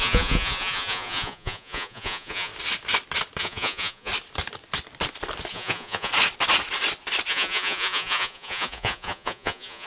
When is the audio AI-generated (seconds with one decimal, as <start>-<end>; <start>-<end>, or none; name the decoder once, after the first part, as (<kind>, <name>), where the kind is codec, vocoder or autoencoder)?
0.0-2.5 (vocoder, Vocos); 3.4-4.1; 5.5-6.1; 7.3-9.9